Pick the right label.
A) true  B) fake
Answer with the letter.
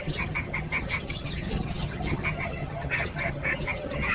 B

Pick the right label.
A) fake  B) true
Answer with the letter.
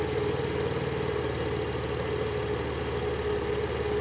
B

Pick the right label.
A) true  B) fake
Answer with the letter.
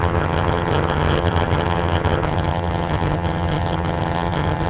B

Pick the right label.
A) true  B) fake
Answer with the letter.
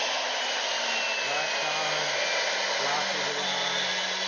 A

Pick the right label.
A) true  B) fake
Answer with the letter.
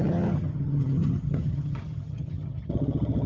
B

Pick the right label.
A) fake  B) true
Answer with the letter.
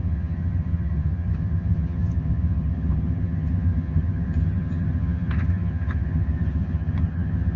A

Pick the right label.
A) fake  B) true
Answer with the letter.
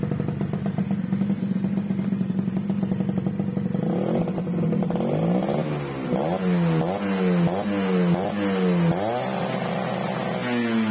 B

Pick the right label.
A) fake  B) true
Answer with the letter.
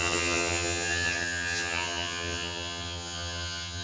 A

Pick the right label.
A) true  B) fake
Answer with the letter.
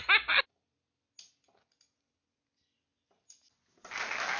A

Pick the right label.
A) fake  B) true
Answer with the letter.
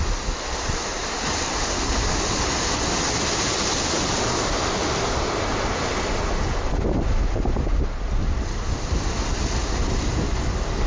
B